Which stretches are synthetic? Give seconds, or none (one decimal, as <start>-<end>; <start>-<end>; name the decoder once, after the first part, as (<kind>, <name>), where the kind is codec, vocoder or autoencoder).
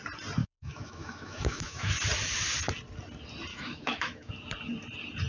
0.4-1.9 (autoencoder, DAC-VAE); 3.5-4.3